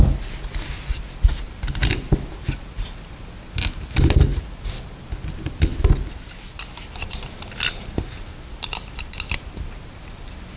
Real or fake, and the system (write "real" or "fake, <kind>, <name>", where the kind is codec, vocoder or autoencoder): real